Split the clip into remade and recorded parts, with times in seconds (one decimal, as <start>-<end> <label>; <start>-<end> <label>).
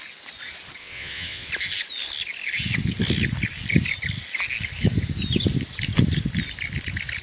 0.0-0.8 recorded; 0.8-1.5 remade; 1.5-7.2 recorded